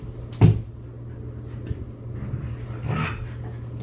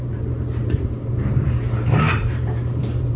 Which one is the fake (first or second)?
second